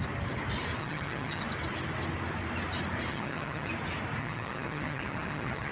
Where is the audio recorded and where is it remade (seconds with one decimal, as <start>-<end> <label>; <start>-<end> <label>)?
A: 0.0-0.8 recorded; 0.8-1.4 remade; 1.4-3.1 recorded; 3.1-3.7 remade; 3.7-4.2 recorded; 4.2-5.7 remade